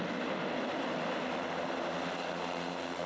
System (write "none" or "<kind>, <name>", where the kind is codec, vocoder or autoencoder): none